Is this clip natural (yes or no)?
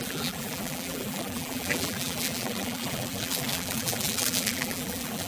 no